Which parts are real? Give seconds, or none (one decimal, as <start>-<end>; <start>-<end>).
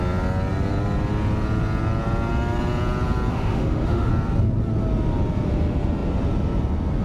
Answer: 0.0-3.3; 4.1-7.0